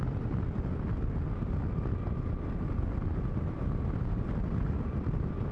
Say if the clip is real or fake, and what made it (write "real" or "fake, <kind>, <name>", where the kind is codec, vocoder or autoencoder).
real